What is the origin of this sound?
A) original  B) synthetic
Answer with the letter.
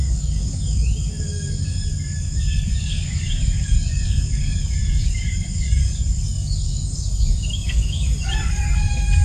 B